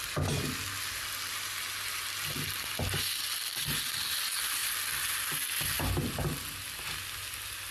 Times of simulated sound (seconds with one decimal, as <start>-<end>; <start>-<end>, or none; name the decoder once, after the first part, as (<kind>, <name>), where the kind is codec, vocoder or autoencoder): none